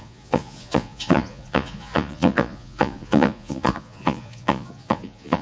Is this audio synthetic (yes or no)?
yes